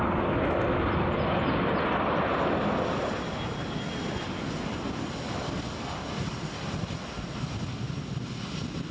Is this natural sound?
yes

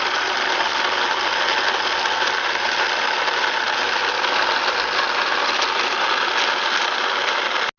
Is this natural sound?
yes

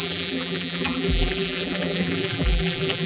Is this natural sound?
no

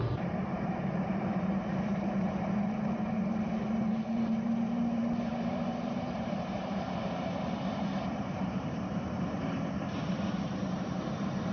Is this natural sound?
no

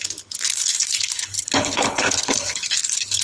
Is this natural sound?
no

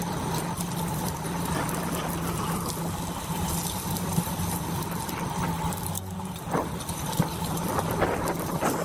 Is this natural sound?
yes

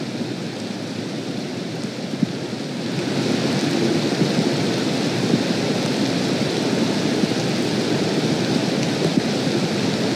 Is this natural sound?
yes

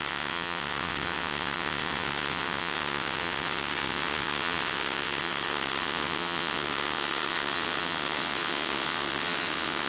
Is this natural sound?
no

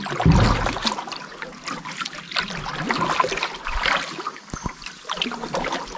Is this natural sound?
yes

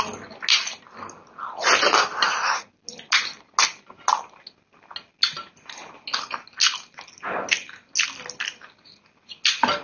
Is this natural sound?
yes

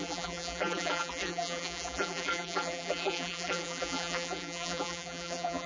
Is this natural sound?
no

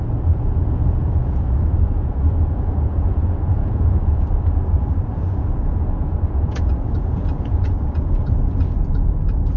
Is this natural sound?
no